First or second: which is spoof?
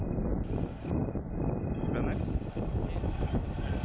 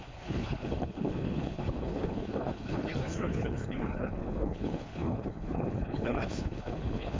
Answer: second